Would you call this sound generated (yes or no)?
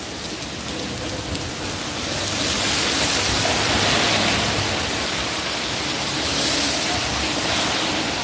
no